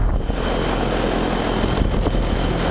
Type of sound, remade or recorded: recorded